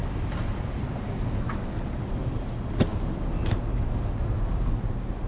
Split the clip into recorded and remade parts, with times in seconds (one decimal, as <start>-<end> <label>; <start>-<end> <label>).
0.0-5.3 recorded